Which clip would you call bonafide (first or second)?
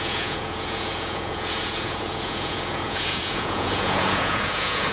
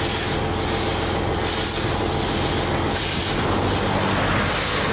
second